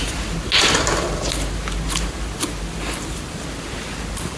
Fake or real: real